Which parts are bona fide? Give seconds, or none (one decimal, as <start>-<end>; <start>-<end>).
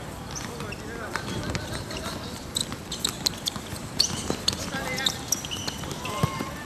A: 2.6-3.3; 3.8-4.6